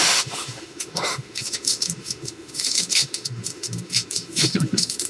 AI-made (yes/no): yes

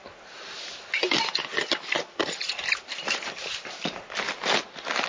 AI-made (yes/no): no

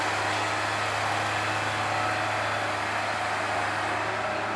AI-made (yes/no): no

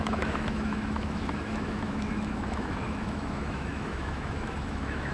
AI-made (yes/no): yes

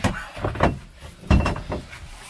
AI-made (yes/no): no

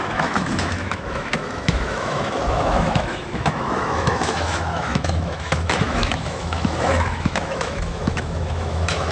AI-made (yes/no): yes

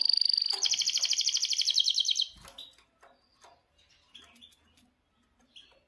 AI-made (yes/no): no